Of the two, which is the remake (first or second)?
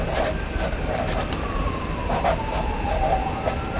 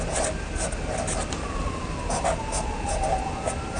first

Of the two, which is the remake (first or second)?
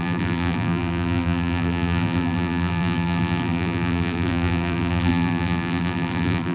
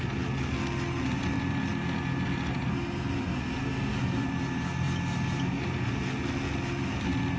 first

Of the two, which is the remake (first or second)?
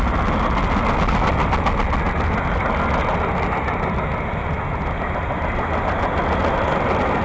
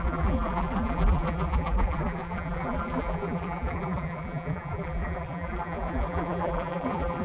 second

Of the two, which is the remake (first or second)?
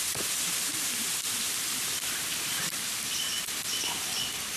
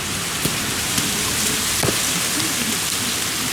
first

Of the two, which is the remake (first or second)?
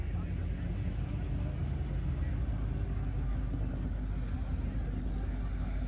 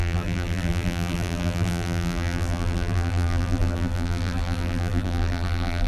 second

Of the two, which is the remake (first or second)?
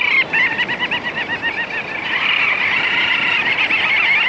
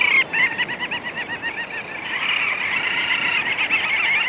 first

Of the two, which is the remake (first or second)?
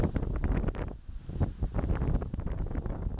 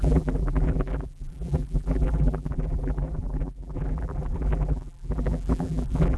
second